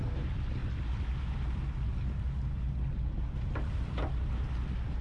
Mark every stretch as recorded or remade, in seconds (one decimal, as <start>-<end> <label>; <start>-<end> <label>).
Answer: 0.0-5.0 recorded